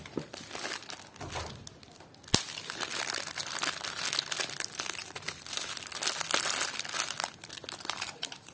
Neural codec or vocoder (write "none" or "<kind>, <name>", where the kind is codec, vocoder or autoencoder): none